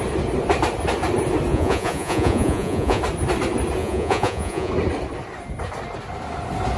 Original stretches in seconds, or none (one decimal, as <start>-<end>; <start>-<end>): 0.0-1.5; 3.0-3.8; 4.7-6.8